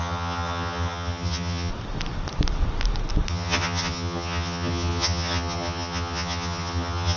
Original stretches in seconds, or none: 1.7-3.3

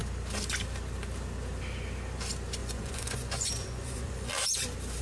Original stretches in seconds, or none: 0.0-2.6; 4.3-5.0

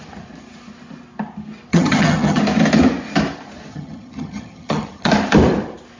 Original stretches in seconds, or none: 0.0-1.7; 2.4-3.7; 5.1-6.0

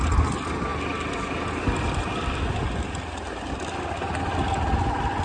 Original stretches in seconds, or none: 0.0-5.2

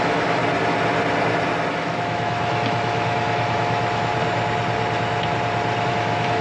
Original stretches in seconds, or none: 0.4-1.7; 4.1-5.9

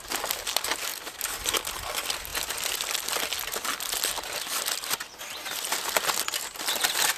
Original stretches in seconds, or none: 0.0-7.2